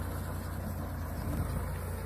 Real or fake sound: real